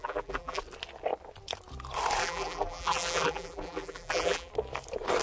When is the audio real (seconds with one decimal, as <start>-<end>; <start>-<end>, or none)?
0.6-2.2; 4.5-5.2